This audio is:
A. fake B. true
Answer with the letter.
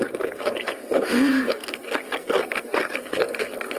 A